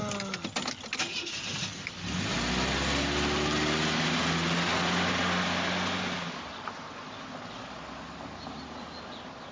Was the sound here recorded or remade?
recorded